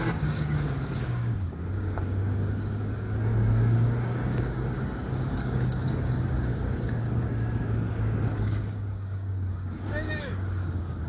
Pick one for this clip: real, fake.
fake